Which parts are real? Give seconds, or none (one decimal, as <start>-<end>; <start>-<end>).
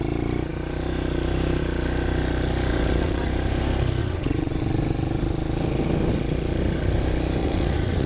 0.0-2.7; 3.3-4.0; 4.6-7.4